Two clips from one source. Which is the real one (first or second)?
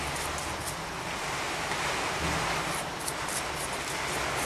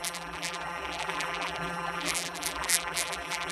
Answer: first